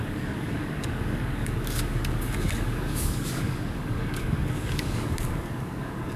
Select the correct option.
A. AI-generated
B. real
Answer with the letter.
A